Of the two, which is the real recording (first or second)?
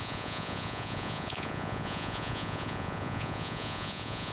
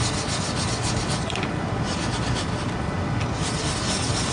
second